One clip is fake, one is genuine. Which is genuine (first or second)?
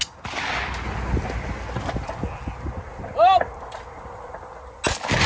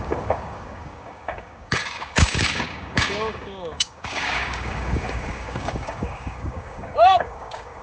first